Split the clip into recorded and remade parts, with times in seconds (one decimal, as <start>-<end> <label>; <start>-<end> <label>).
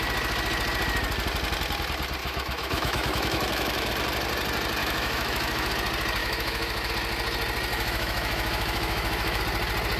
0.0-2.2 recorded; 2.2-3.9 remade; 3.9-4.8 recorded; 4.8-5.7 remade; 5.7-6.2 recorded; 6.2-6.9 remade; 6.9-7.7 recorded; 7.7-9.4 remade; 9.4-10.0 recorded